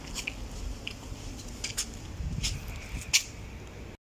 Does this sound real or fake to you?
real